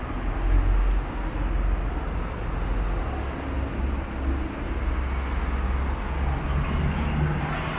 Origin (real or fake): real